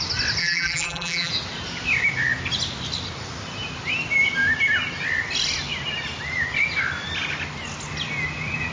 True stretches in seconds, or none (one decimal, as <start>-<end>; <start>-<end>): 0.0-0.4; 1.3-8.7